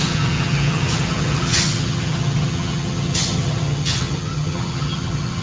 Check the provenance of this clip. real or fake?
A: fake